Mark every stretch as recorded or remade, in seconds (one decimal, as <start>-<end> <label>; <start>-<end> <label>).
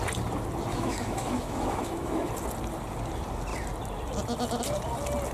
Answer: 0.0-0.7 recorded; 0.7-2.3 remade; 2.3-5.3 recorded